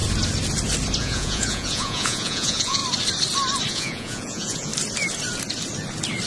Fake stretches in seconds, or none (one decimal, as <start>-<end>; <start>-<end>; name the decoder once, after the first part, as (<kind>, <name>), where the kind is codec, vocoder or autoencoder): 1.0-2.8 (vocoder, Vocos); 3.7-4.7